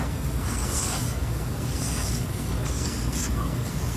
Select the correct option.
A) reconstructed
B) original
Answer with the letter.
A